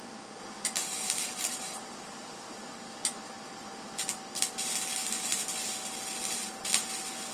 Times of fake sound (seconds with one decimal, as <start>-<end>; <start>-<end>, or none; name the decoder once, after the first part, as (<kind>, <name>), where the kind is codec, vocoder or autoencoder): 0.8-1.9 (vocoder, BigVGAN v2)